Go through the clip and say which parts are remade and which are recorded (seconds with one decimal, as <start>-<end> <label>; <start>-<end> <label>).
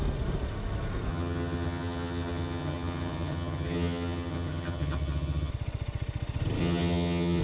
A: 0.0-1.1 recorded; 1.1-5.5 remade; 5.5-6.6 recorded; 6.6-7.4 remade